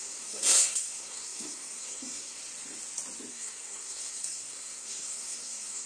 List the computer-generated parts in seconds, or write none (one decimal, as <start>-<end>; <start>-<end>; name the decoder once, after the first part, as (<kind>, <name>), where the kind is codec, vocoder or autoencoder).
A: 0.0-2.4 (codec, SNAC); 3.3-5.9